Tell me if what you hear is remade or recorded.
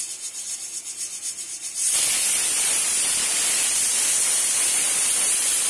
recorded